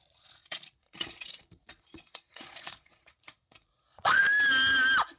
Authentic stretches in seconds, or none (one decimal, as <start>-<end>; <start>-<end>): 4.2-5.2